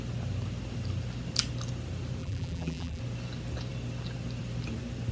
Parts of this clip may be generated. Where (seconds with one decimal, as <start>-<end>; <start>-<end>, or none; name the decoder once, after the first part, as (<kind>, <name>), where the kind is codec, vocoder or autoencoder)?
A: 2.2-3.0 (vocoder, BigVGAN v2)